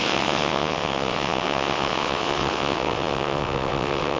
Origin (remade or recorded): remade